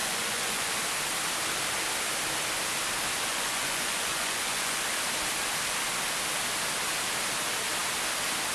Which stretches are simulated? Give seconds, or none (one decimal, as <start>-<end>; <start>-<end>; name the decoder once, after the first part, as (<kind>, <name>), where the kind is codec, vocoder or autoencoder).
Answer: 0.0-0.7 (vocoder, Vocos); 3.3-4.8